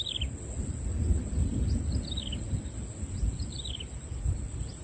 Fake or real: real